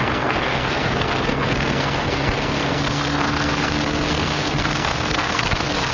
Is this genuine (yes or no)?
no